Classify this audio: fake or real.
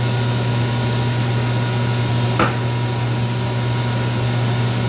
real